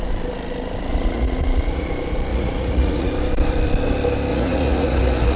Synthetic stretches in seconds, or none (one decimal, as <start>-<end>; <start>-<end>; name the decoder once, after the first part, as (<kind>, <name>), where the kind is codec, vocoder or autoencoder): 0.9-1.9 (vocoder, Vocos); 2.3-3.1; 4.3-5.4

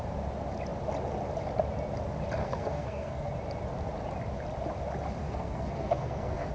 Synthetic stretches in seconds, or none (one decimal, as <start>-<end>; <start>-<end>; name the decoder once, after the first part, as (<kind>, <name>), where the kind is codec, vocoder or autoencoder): 2.4-3.3 (codec, SNAC); 5.2-6.5

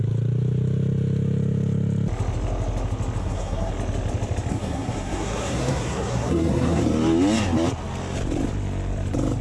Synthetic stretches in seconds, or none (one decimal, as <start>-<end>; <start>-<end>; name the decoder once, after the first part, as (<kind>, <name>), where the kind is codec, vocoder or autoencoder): 3.2-3.7 (codec, SNAC); 4.5-6.8